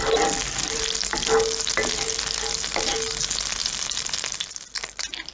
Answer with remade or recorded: recorded